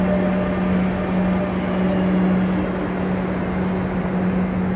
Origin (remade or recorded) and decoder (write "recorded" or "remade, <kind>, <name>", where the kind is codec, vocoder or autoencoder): recorded